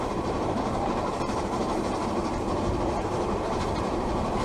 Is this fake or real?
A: fake